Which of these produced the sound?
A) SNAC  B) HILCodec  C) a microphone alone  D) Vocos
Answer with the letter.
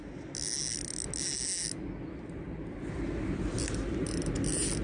C